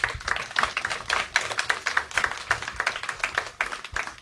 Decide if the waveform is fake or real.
real